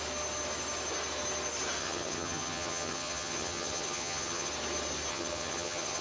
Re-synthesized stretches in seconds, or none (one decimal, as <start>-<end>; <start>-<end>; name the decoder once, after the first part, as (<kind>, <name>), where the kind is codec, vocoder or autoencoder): 1.8-4.5 (vocoder, HiFi-GAN); 5.1-6.0